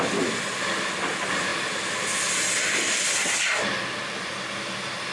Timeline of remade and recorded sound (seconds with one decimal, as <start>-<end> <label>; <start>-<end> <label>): 0.0-5.1 recorded